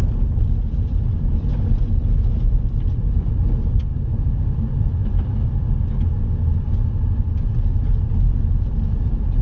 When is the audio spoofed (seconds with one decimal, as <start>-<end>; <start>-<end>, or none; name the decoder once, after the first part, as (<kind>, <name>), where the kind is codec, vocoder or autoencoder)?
1.1-3.3 (vocoder, BigVGAN v2); 3.9-4.6; 5.0-5.5